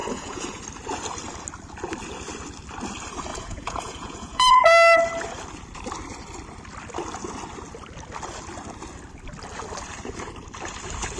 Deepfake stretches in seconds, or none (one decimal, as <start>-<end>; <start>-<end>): 0.0-0.6; 3.3-4.6

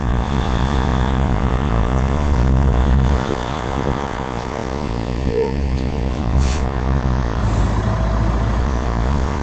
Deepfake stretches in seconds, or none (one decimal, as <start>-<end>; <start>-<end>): 0.0-7.4; 8.6-9.4

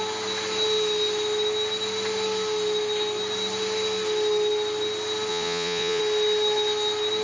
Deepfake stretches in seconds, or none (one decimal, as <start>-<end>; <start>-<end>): 5.3-6.0

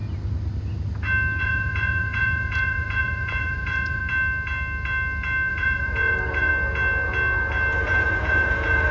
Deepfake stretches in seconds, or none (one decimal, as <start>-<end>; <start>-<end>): 1.4-4.0; 5.5-6.5; 7.8-8.9